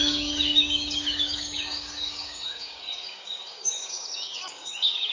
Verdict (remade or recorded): remade